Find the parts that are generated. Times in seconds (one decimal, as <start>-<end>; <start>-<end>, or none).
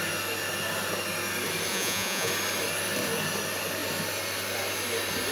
1.7-2.3